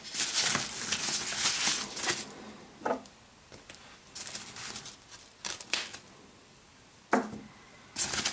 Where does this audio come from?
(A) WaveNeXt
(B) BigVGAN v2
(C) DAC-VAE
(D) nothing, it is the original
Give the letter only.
D